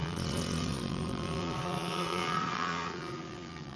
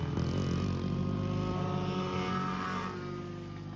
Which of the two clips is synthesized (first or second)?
first